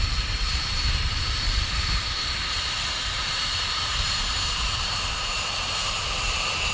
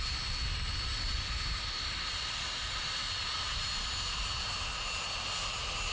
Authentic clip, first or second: second